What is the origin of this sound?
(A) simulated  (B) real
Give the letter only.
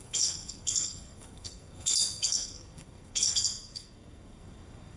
A